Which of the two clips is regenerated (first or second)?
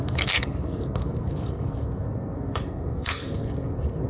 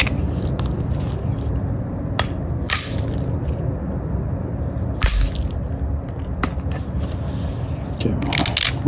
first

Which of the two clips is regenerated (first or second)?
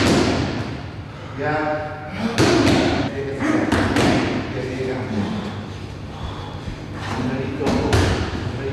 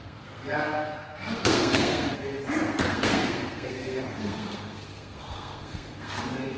second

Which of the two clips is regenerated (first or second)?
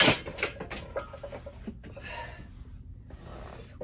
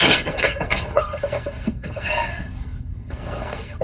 second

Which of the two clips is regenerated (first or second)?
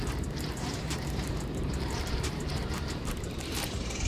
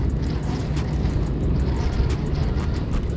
first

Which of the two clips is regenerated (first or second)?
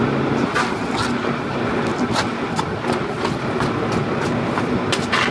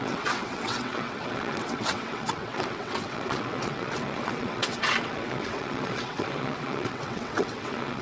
second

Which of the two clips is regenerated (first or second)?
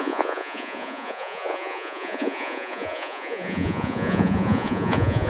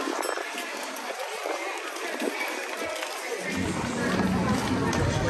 first